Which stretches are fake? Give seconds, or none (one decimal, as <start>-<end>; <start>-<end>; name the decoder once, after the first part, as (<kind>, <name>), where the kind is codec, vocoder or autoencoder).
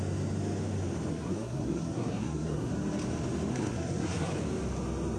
1.1-2.7 (codec, SNAC); 3.5-4.3